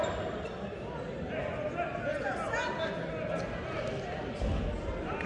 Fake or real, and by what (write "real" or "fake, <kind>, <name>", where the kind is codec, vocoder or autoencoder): real